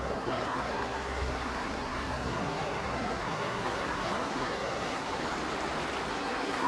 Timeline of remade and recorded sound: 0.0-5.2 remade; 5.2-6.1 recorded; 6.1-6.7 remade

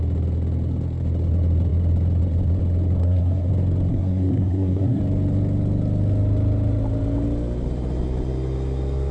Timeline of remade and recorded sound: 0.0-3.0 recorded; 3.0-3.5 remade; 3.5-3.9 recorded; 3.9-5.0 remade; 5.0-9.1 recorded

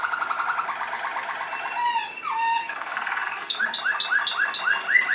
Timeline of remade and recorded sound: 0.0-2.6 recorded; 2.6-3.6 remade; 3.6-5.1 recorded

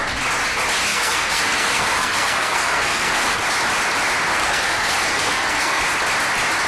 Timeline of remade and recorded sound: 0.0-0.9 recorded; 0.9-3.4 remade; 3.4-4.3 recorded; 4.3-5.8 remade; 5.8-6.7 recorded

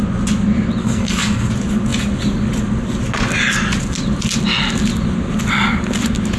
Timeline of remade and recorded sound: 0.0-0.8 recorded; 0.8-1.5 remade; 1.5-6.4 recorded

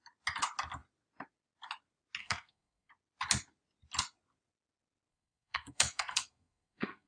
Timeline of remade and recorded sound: 0.0-2.2 recorded; 2.2-2.9 remade; 2.9-5.1 recorded; 5.1-7.1 remade